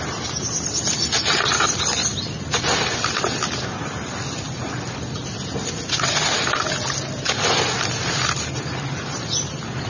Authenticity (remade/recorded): recorded